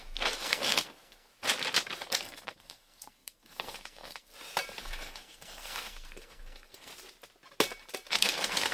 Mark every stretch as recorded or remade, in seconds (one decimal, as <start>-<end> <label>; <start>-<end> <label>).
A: 0.0-1.3 remade; 1.3-2.1 recorded; 2.1-4.3 remade; 4.3-4.8 recorded; 4.8-6.9 remade; 6.9-8.1 recorded; 8.1-8.7 remade